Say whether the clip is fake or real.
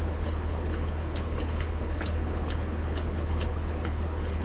fake